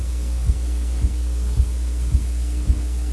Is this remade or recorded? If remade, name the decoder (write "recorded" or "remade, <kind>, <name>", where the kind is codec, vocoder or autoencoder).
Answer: remade, codec, SNAC